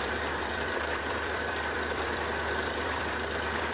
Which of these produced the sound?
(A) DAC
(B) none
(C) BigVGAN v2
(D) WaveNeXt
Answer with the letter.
C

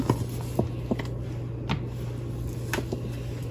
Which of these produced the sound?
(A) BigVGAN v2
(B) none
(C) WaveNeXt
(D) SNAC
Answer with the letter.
B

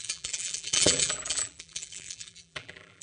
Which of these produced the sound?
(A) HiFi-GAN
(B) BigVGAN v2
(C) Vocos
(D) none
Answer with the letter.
B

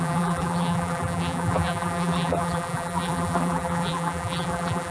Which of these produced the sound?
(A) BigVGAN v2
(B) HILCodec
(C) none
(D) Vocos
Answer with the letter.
A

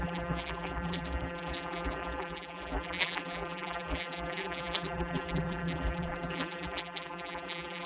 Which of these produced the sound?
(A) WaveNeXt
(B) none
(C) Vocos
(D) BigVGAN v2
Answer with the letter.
D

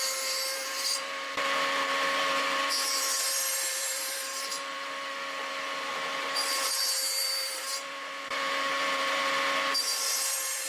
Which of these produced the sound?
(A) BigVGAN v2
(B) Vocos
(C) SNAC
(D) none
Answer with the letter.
A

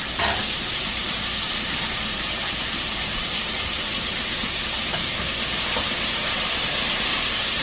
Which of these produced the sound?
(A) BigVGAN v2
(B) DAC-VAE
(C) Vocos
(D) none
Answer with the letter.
A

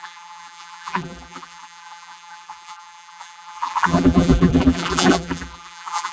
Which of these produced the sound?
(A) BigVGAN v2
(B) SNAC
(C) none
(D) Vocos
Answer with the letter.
A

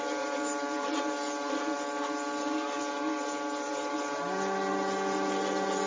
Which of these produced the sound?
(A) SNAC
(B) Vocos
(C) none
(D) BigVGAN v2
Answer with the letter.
C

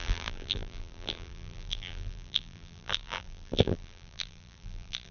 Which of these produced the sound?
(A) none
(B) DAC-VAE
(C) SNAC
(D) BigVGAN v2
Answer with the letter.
D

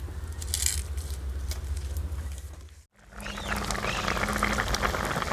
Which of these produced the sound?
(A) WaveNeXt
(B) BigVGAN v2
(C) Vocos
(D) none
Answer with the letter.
D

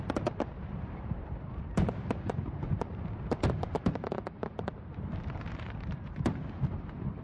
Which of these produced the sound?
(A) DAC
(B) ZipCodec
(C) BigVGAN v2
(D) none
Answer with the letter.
C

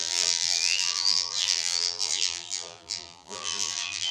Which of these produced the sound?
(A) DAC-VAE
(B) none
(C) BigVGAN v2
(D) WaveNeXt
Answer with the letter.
C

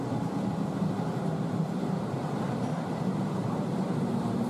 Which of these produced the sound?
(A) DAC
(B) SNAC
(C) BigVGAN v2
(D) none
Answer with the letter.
C